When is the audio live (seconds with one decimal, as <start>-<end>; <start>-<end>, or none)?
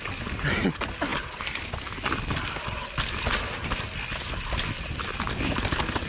0.0-6.1